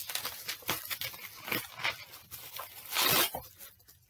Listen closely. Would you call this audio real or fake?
real